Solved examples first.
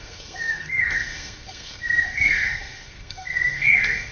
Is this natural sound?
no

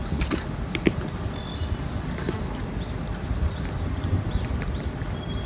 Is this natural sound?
yes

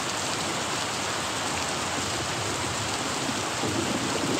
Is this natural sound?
yes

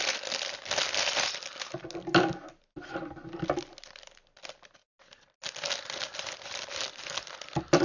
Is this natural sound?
yes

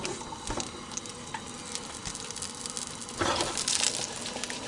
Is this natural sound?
yes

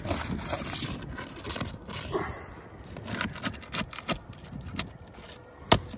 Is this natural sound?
yes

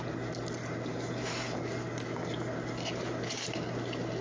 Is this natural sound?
yes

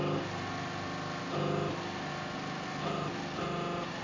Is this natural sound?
yes